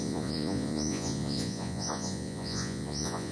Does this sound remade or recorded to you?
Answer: remade